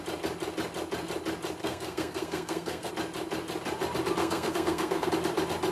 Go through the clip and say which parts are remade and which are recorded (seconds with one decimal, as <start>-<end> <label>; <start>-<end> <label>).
0.0-1.6 recorded; 1.6-2.9 remade; 2.9-4.2 recorded; 4.2-5.1 remade; 5.1-5.7 recorded